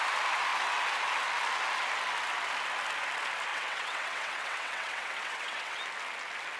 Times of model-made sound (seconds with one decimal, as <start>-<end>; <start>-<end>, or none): 3.5-5.8